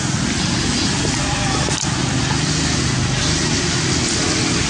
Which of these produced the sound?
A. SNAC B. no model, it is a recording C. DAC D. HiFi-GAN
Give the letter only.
B